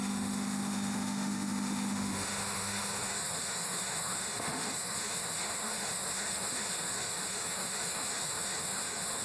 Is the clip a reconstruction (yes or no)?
yes